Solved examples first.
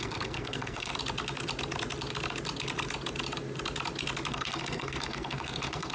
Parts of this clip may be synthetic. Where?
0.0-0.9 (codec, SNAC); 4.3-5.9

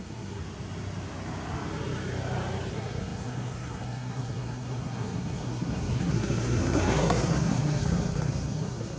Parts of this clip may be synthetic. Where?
0.0-0.4 (codec, SNAC); 2.7-9.0

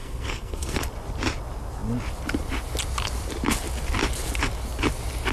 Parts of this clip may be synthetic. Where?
0.0-0.8 (codec, SNAC)

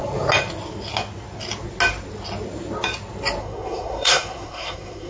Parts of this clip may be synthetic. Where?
3.4-5.1 (codec, SNAC)

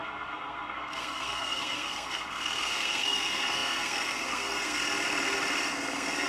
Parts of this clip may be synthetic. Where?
0.0-4.8 (codec, SNAC); 5.7-6.3